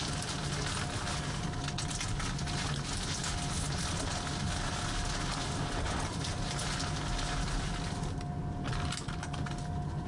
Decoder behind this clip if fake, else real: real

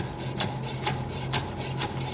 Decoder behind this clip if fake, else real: real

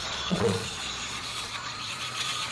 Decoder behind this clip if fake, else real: fake, vocoder, Vocos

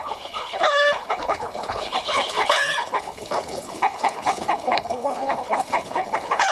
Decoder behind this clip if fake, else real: fake, codec, HILCodec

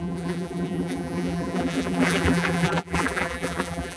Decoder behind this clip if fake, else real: fake, vocoder, BigVGAN v2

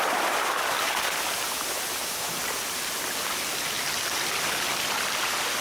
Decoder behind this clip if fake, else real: real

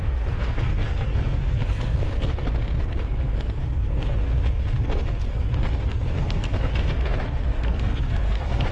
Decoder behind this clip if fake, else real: fake, codec, SNAC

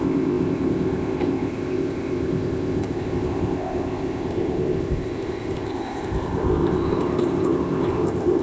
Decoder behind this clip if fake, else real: fake, codec, ZipCodec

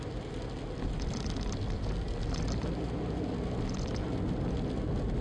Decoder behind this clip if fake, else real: real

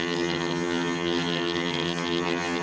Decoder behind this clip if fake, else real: fake, vocoder, HiFi-GAN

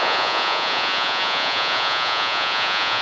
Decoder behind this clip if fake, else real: fake, vocoder, Vocos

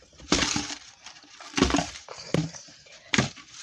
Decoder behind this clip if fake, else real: fake, vocoder, BigVGAN v2